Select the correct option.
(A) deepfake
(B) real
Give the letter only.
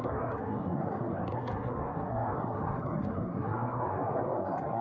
A